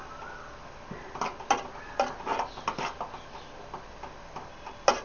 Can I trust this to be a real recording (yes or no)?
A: yes